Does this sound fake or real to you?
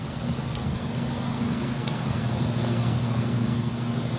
fake